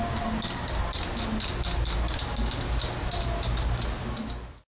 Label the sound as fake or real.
real